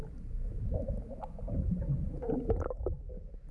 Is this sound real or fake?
real